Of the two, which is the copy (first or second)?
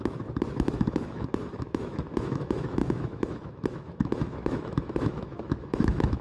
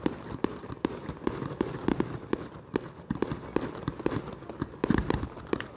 first